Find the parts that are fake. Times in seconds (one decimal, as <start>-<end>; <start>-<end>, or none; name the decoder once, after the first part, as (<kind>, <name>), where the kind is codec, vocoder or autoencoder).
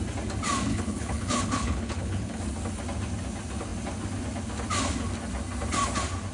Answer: 0.7-2.4 (codec, HILCodec)